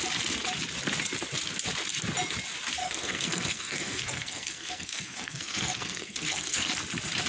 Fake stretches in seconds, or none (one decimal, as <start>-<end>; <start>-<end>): 2.8-6.7